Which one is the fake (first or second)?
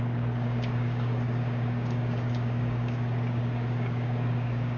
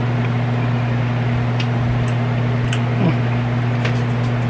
first